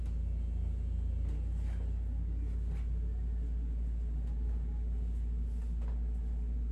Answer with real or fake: real